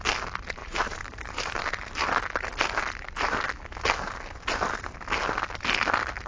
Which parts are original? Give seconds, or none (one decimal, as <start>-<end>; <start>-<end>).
0.0-0.6; 1.9-6.3